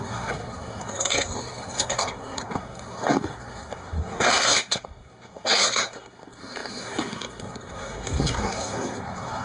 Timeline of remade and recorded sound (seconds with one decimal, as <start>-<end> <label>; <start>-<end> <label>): 0.0-9.4 remade